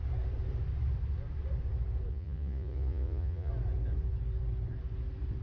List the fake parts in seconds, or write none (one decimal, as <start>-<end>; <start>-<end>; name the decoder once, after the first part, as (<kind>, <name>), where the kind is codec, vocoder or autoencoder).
2.1-3.5 (vocoder, Vocos)